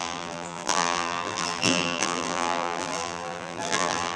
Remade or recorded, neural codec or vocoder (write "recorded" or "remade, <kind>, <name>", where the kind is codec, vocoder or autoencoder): remade, vocoder, BigVGAN v2